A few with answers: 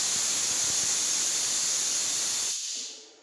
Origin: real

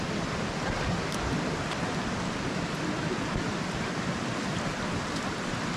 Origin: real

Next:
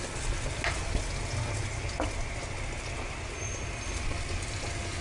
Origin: real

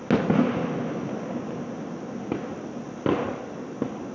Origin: real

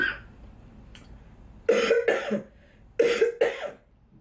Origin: real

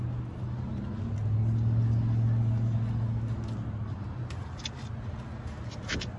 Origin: real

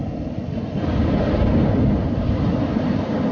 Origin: real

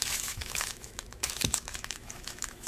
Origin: fake